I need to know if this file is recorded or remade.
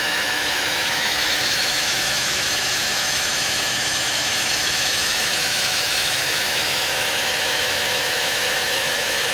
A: remade